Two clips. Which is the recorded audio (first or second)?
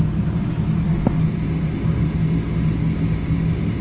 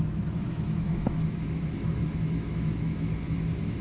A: first